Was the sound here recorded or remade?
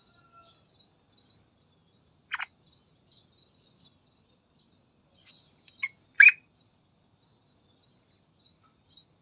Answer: recorded